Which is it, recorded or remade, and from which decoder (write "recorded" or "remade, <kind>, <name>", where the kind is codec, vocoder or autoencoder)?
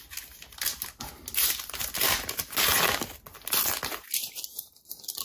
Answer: recorded